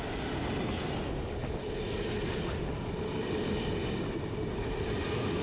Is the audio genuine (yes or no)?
yes